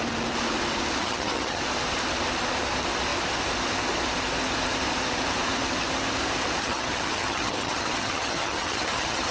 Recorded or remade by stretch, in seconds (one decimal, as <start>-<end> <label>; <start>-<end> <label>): 0.0-1.0 recorded; 1.0-1.6 remade; 1.6-6.6 recorded; 6.6-9.3 remade